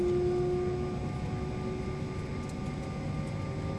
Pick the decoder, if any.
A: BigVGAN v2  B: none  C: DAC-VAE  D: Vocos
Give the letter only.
B